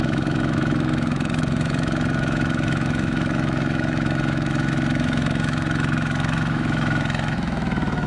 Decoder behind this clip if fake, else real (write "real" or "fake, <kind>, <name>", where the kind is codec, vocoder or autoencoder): fake, autoencoder, DAC-VAE